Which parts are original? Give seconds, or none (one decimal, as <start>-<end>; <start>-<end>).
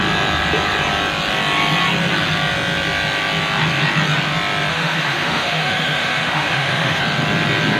0.0-4.7; 7.0-7.8